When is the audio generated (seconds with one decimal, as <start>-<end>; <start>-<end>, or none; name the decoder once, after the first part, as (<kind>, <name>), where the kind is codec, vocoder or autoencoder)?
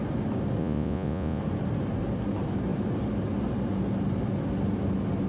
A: 0.6-1.4 (vocoder, Vocos)